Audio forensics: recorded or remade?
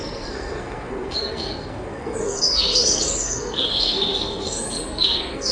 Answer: remade